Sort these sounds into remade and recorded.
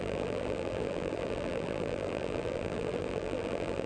remade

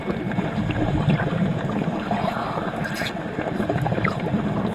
remade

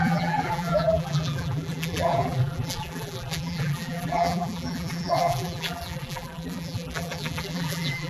remade